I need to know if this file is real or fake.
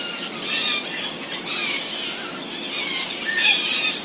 real